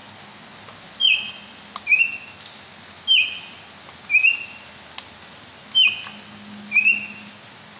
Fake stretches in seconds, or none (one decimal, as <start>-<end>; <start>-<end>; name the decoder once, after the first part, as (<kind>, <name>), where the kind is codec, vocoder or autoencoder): none